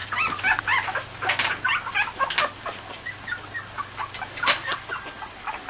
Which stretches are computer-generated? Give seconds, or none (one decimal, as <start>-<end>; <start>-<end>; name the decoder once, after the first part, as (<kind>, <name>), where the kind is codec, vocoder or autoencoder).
none